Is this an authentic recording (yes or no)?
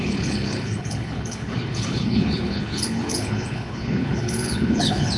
no